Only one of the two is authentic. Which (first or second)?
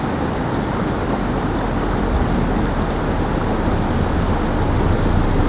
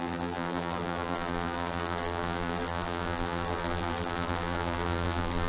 first